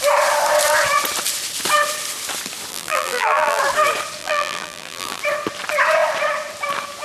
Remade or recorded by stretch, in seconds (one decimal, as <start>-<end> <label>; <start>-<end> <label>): 0.0-2.7 recorded; 2.7-3.6 remade; 3.6-4.2 recorded; 4.2-5.2 remade; 5.2-7.0 recorded